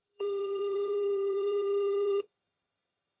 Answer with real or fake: fake